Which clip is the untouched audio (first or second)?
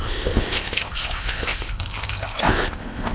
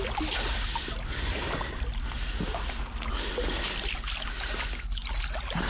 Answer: second